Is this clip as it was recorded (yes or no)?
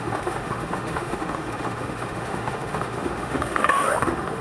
no